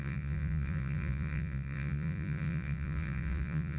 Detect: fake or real fake